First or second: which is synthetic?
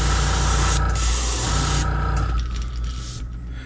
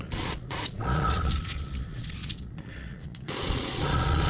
second